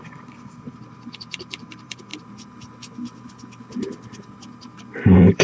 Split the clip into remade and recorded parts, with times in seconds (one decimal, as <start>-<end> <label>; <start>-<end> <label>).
0.0-2.1 remade; 2.1-4.9 recorded; 4.9-5.4 remade

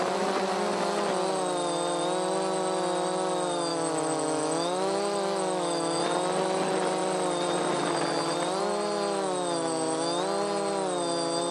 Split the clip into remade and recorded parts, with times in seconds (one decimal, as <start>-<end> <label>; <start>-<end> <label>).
0.0-3.7 recorded; 3.7-6.0 remade; 6.0-11.5 recorded

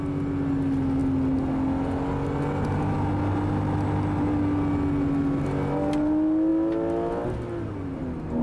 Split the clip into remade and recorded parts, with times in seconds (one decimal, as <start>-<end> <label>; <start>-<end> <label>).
0.0-8.4 recorded

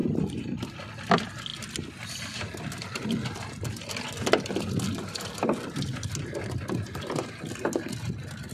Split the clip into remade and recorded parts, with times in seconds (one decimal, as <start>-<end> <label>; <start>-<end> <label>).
0.0-8.5 recorded

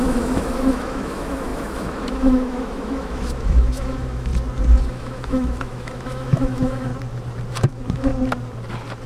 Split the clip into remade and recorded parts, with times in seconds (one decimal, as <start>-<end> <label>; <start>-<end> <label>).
0.0-4.3 remade; 4.3-4.8 recorded; 4.8-6.9 remade; 6.9-7.5 recorded; 7.5-8.1 remade; 8.1-9.1 recorded